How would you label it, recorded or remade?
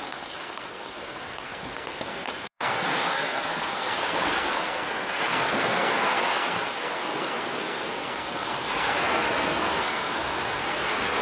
remade